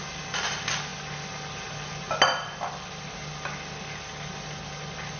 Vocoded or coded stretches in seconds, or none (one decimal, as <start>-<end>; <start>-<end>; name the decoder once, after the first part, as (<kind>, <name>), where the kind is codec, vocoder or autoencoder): none